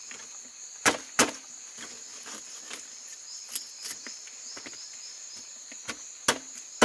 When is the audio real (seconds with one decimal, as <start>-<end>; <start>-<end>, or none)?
0.0-6.8